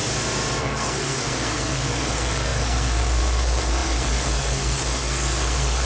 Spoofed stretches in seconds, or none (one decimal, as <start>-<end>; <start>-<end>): 0.6-5.8